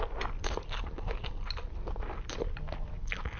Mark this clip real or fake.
real